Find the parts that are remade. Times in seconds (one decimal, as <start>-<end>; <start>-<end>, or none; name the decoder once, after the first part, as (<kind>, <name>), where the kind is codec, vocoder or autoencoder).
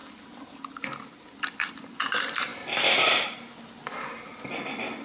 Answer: none